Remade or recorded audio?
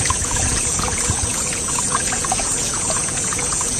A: remade